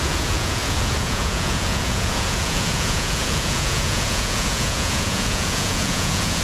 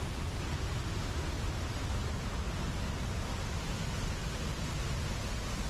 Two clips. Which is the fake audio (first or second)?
first